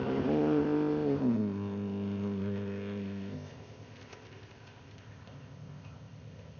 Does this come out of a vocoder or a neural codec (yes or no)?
yes